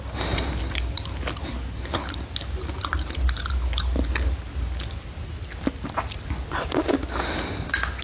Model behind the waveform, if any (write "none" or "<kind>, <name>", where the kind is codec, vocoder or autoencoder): none